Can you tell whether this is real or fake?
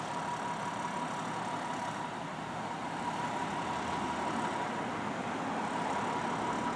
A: real